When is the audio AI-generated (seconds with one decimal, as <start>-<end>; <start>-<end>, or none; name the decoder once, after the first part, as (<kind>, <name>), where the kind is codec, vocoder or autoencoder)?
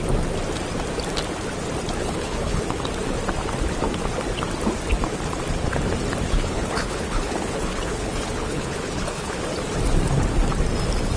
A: 2.0-2.6 (codec, HILCodec); 6.3-9.4